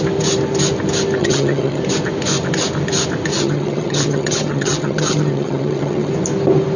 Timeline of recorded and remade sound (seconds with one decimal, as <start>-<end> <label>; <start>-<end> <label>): 0.0-1.2 recorded; 1.2-1.8 remade; 1.8-3.3 recorded; 3.3-6.1 remade; 6.1-6.8 recorded